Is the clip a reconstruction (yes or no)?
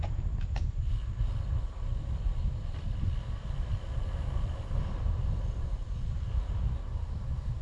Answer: no